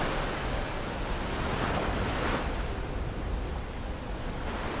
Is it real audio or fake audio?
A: real